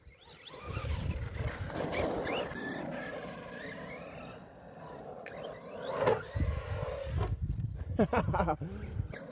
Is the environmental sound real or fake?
real